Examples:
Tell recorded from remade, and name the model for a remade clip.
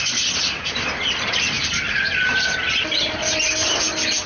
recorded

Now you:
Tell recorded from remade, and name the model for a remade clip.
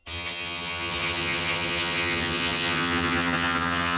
remade, vocoder, HiFi-GAN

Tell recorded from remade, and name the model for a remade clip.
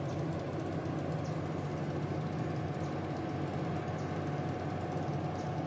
recorded